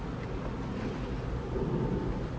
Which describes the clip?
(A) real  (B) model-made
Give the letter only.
A